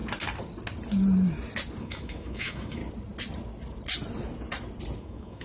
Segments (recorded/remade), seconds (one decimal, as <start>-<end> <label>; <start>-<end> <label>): 0.0-1.8 recorded; 1.8-2.8 remade; 2.8-5.0 recorded; 5.0-5.4 remade